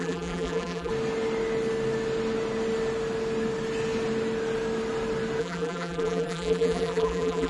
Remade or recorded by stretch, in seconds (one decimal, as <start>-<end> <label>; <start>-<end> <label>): 0.0-0.9 remade; 0.9-5.4 recorded; 5.4-7.5 remade

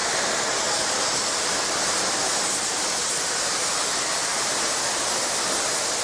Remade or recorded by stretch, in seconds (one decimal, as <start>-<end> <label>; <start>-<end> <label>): 0.0-6.0 recorded

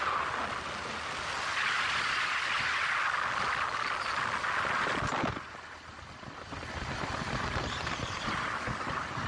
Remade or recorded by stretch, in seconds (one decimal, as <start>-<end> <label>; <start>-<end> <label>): 0.0-9.3 recorded

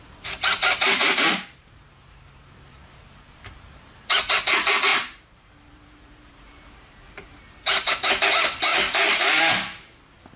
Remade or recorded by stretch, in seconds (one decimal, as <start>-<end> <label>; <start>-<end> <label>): 0.0-0.6 recorded; 0.6-4.1 remade; 4.1-4.9 recorded; 4.9-7.9 remade; 7.9-8.7 recorded; 8.7-9.4 remade; 9.4-10.4 recorded

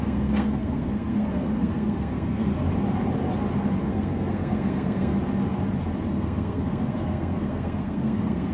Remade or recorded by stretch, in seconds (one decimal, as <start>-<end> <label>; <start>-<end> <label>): 0.0-2.5 remade; 2.5-3.8 recorded; 3.8-5.1 remade; 5.1-6.1 recorded; 6.1-8.5 remade